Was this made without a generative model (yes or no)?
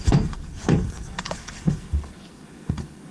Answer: no